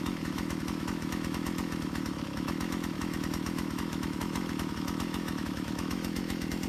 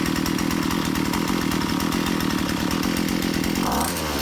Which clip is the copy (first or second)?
first